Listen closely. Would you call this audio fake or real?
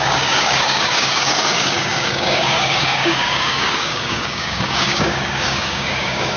fake